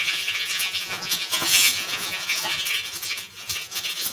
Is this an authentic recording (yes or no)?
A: no